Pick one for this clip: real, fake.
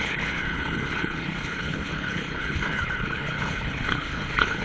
fake